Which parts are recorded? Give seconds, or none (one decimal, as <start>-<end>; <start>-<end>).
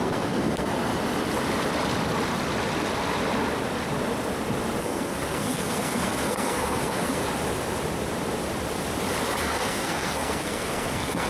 0.9-4.8; 7.2-9.4